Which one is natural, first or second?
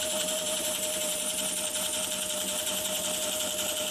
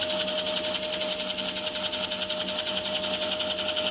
second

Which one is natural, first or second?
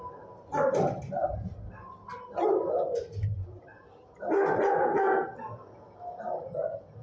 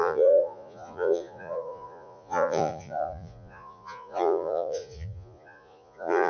first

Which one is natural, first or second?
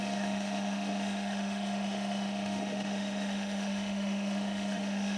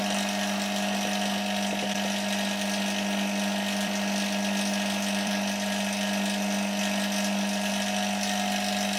second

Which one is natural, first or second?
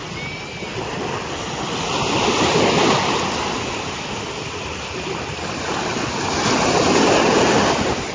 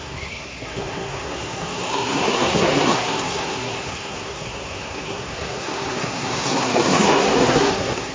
first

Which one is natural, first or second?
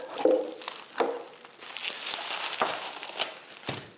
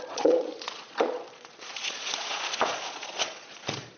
first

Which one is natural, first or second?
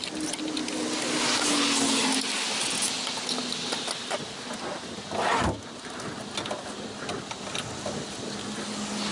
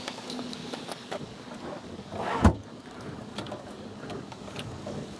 first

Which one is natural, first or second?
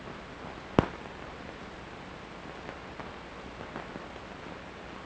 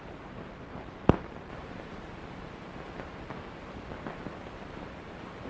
first